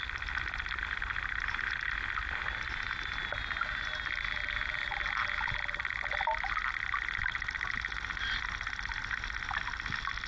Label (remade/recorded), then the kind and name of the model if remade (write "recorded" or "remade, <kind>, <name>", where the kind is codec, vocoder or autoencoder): recorded